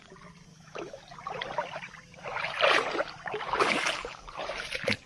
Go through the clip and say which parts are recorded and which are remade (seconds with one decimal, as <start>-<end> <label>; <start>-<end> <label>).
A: 0.0-0.5 recorded; 0.5-1.0 remade; 1.0-5.1 recorded